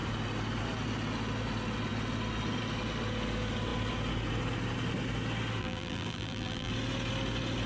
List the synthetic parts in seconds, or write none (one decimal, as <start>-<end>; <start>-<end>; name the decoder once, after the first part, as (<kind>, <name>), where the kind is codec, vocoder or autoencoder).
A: 5.6-6.7 (vocoder, BigVGAN v2)